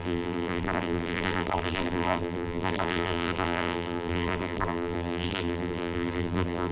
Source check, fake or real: fake